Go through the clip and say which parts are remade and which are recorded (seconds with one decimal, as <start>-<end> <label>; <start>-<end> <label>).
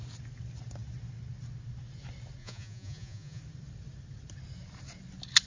0.0-2.4 recorded; 2.4-3.4 remade; 3.4-5.5 recorded